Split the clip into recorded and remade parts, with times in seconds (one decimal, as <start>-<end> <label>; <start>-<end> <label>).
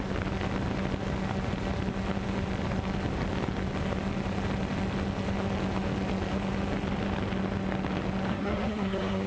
0.0-8.3 recorded; 8.3-9.3 remade